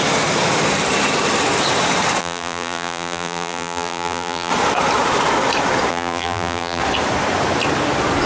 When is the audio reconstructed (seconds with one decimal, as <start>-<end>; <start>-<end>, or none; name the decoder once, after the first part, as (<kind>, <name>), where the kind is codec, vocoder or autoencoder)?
2.2-4.5 (vocoder, BigVGAN v2); 5.9-6.8